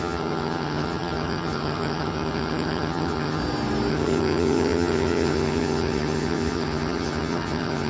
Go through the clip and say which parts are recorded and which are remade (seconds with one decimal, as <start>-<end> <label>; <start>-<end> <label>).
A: 0.0-3.4 remade; 3.4-3.9 recorded; 3.9-7.9 remade